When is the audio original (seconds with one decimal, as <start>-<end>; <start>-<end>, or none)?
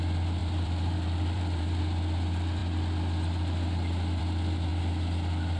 0.0-0.4; 1.8-5.6